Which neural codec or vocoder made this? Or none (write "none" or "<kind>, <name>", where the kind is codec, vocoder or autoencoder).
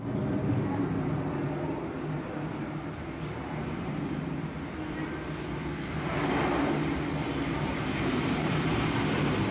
none